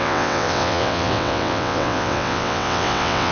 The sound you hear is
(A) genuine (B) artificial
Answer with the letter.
B